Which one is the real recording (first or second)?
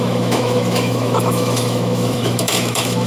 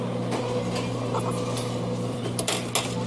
second